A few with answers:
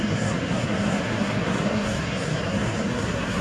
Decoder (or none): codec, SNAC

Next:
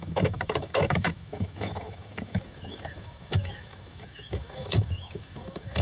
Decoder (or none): autoencoder, DAC-VAE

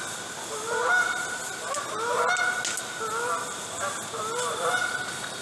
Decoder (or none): none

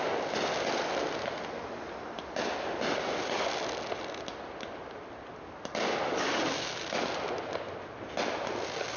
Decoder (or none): none